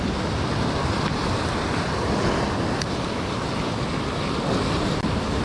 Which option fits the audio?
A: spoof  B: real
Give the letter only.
B